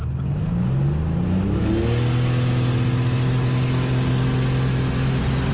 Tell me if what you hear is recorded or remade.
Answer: recorded